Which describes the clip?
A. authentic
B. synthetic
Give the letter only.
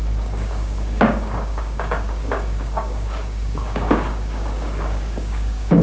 B